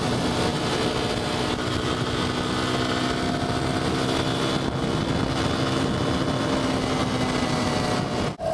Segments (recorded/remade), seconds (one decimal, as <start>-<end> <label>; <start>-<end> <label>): 0.0-8.5 recorded